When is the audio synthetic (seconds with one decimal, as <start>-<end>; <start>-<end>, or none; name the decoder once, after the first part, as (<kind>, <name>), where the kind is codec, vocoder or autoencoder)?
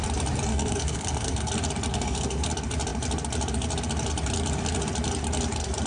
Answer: 0.5-1.5 (codec, SNAC); 1.9-2.5